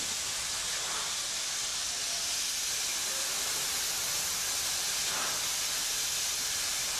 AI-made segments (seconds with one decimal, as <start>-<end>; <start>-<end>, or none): none